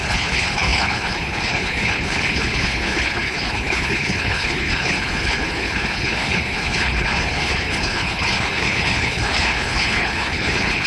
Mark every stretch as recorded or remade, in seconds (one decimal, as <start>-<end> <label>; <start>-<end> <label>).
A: 0.0-10.9 remade